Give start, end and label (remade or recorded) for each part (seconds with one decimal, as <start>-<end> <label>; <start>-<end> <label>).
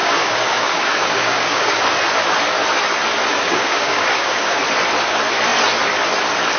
0.0-1.8 remade; 1.8-3.3 recorded; 3.3-4.6 remade; 4.6-6.6 recorded